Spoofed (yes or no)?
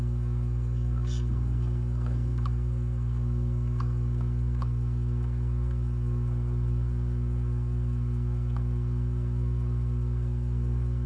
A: yes